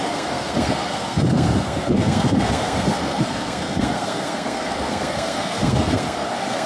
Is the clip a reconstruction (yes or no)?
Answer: yes